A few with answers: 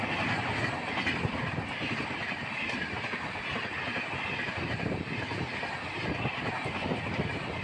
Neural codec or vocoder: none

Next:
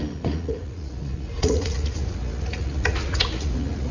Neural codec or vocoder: vocoder, Vocos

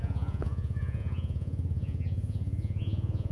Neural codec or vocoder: vocoder, Vocos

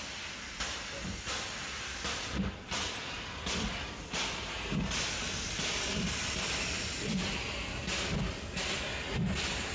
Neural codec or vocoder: none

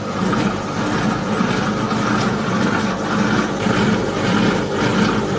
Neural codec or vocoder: none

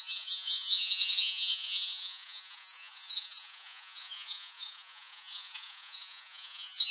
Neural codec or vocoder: vocoder, Vocos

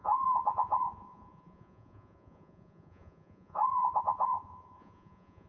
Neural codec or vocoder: vocoder, Vocos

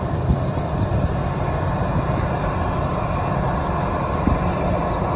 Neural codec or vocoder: none